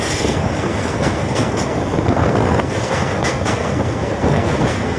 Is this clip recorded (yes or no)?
no